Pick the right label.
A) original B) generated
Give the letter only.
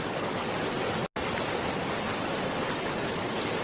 A